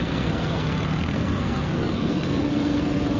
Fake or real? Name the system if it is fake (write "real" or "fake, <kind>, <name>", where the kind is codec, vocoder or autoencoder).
fake, codec, SNAC